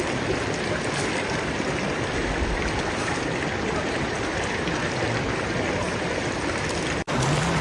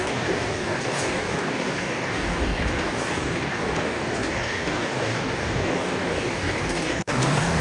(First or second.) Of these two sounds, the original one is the first